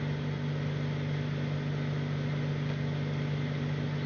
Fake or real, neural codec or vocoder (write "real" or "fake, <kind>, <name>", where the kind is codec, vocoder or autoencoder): real